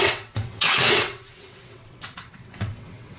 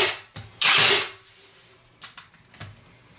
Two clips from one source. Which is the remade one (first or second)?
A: first